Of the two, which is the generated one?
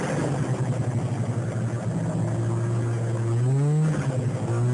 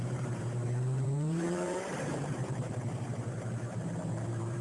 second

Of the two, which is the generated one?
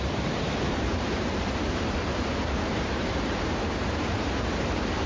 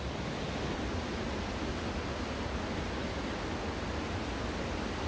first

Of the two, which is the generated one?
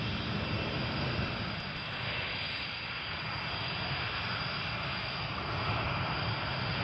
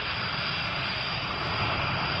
second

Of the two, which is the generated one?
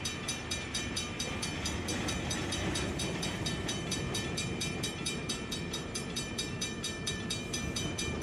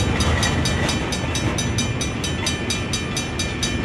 first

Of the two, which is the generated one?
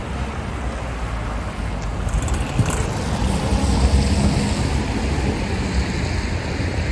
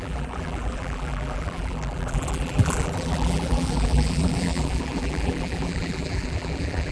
second